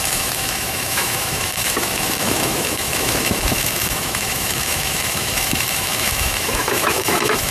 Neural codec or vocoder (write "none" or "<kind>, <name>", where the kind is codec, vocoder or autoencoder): autoencoder, DAC-VAE